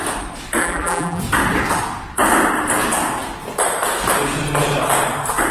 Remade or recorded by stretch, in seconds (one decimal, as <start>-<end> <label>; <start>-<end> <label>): 0.0-0.6 recorded; 0.6-1.2 remade; 1.2-5.5 recorded